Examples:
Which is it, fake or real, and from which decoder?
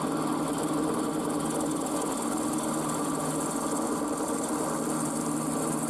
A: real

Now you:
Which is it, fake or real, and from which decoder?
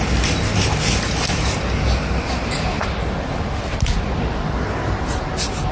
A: real